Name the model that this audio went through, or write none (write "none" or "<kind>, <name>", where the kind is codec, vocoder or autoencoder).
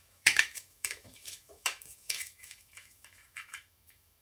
autoencoder, DAC-VAE